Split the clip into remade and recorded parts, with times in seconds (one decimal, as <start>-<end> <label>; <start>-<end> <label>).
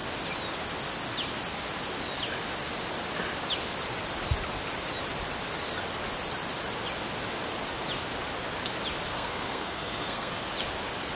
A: 0.0-9.1 recorded; 9.1-10.3 remade; 10.3-11.2 recorded